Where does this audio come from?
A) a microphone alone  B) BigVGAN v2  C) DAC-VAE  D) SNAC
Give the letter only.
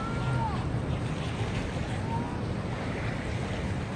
A